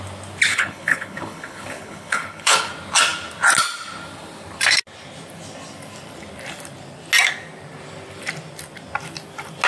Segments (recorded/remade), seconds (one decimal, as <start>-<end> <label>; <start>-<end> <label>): 0.0-0.5 recorded; 0.5-2.7 remade; 2.7-9.7 recorded